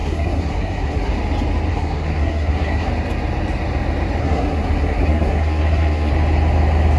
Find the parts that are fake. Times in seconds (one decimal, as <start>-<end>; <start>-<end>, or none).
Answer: 0.0-1.1; 1.7-2.9; 4.2-6.1